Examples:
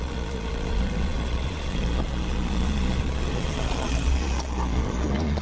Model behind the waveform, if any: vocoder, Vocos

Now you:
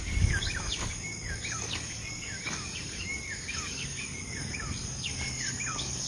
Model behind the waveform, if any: codec, DAC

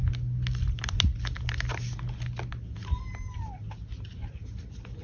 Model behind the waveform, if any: none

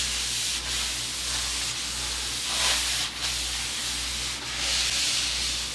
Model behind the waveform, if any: none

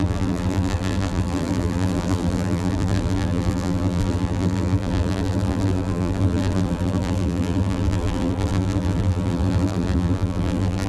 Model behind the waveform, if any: vocoder, BigVGAN v2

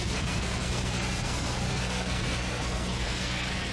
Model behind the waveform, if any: codec, SNAC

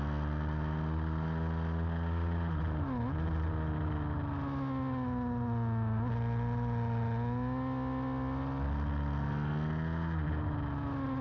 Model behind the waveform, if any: none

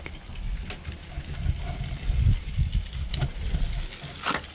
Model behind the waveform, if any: none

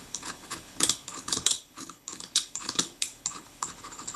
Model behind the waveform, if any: codec, HILCodec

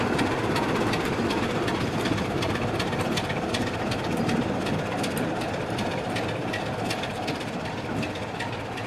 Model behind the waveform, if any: vocoder, BigVGAN v2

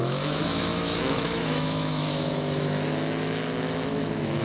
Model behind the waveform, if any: autoencoder, DAC-VAE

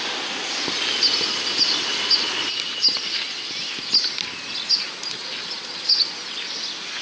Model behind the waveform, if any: none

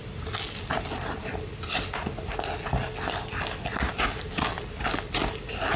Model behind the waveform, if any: none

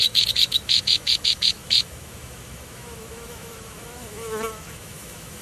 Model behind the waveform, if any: autoencoder, DAC-VAE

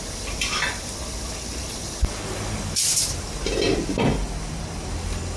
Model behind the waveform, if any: none